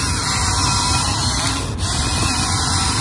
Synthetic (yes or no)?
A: no